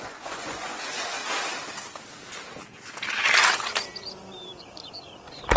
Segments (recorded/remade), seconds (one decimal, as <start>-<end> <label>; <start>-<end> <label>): 0.0-1.2 remade; 1.2-4.6 recorded; 4.6-5.6 remade